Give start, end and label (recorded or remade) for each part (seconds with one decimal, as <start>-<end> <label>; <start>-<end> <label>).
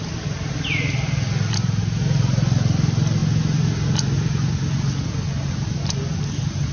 0.0-6.7 recorded